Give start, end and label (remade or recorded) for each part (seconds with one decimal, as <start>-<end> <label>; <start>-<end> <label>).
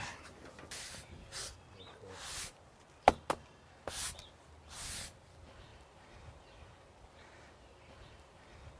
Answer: 0.0-5.7 recorded; 5.7-7.2 remade; 7.2-8.8 recorded